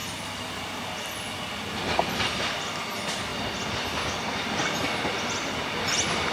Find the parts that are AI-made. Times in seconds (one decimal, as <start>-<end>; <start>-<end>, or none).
none